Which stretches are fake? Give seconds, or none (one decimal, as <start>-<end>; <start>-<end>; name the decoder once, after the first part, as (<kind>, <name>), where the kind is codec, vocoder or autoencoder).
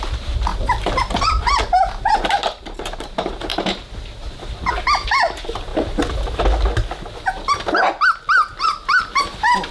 0.0-3.5 (vocoder, BigVGAN v2); 4.7-5.7; 9.0-9.7